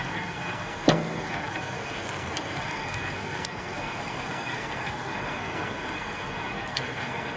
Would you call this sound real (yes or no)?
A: no